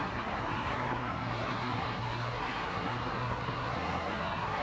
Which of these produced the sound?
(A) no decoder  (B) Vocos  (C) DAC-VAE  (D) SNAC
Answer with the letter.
D